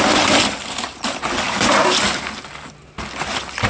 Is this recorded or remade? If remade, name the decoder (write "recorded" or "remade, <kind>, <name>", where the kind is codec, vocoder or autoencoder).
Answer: recorded